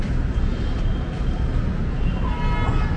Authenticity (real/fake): real